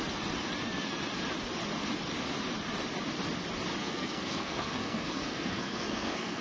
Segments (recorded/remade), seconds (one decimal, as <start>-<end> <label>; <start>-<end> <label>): 0.0-3.8 recorded; 3.8-6.4 remade